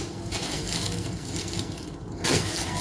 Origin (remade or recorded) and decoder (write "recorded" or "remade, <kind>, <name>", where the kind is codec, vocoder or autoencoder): remade, codec, SNAC